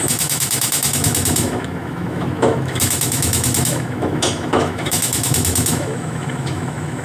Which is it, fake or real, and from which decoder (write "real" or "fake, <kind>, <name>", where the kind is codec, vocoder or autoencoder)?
fake, autoencoder, DAC-VAE